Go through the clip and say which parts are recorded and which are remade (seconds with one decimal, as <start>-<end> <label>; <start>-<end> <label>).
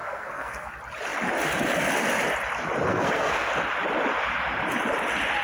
0.0-0.7 remade; 0.7-2.9 recorded; 2.9-3.5 remade; 3.5-5.4 recorded